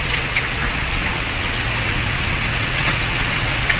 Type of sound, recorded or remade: remade